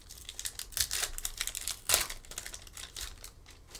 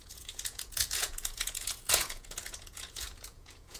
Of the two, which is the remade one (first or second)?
second